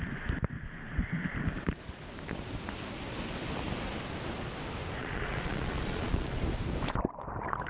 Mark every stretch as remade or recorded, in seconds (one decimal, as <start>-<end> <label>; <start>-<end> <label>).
0.0-5.0 recorded; 5.0-6.4 remade; 6.4-7.7 recorded